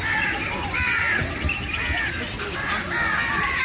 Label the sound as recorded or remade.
recorded